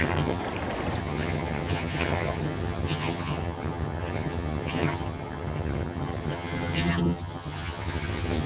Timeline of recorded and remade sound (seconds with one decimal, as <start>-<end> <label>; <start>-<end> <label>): 0.0-0.4 remade; 0.4-1.0 recorded; 1.0-8.5 remade